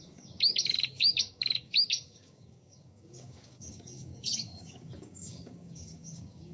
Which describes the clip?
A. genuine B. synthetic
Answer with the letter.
B